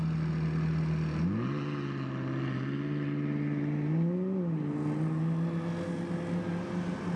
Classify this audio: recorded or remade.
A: recorded